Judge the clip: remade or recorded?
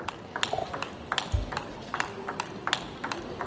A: recorded